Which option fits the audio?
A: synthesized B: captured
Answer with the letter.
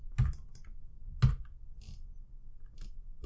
B